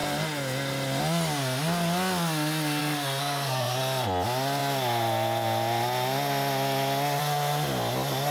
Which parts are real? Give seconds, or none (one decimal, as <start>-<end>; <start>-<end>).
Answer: 0.0-2.8; 3.8-8.3